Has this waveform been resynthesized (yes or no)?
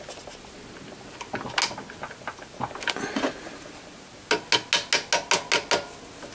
no